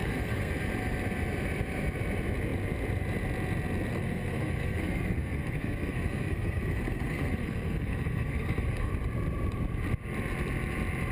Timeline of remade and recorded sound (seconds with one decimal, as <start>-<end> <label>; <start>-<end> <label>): 0.0-0.5 remade; 0.5-3.9 recorded; 3.9-8.9 remade; 8.9-11.1 recorded